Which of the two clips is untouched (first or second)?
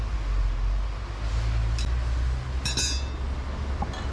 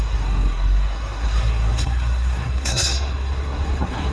first